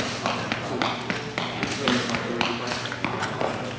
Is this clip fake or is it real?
real